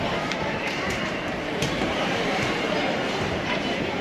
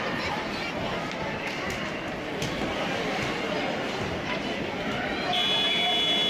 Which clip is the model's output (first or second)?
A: first